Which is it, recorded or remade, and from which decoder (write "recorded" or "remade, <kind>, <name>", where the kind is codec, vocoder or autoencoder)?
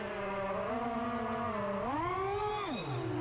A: recorded